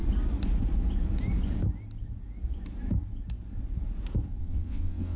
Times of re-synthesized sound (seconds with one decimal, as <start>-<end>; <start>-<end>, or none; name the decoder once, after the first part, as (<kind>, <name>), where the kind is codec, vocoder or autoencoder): 4.4-5.2 (vocoder, WaveNeXt)